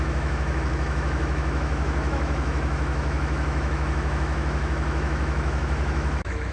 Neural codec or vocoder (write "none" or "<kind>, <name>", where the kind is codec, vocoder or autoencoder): autoencoder, DAC-VAE